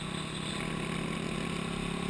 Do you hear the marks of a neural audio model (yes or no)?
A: no